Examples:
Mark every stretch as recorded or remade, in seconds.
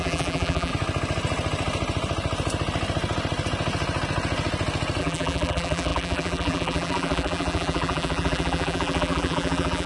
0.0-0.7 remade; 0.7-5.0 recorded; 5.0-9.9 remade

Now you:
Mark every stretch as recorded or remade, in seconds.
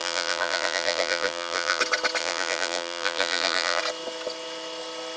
0.0-1.8 remade; 1.8-2.2 recorded; 2.2-3.8 remade; 3.8-5.2 recorded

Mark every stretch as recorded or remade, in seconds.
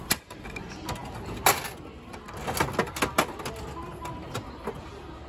0.0-5.3 recorded